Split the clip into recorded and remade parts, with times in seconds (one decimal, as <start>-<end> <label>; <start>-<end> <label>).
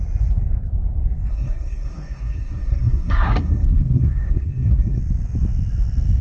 0.0-1.3 recorded; 1.3-5.0 remade; 5.0-6.2 recorded